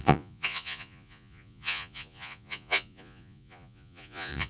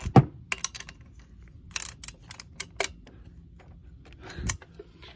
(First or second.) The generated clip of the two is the first